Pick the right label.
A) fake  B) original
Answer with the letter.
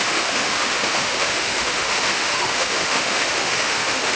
A